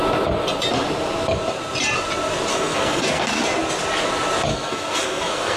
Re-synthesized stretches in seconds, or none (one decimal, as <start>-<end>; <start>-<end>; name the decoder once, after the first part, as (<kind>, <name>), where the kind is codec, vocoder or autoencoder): 2.5-3.4 (codec, SNAC); 4.5-5.6